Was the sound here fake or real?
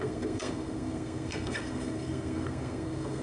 fake